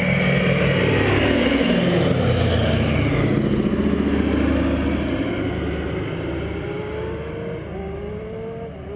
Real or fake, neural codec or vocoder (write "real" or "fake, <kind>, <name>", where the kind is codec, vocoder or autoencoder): real